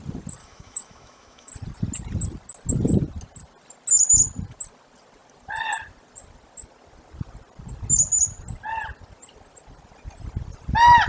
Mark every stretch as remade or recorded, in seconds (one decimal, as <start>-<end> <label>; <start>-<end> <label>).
0.0-0.4 recorded; 0.4-1.5 remade; 1.5-11.1 recorded